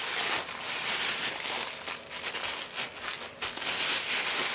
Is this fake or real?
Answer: real